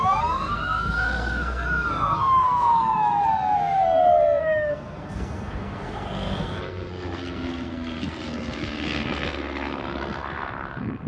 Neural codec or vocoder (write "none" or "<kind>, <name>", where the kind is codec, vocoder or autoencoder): codec, SNAC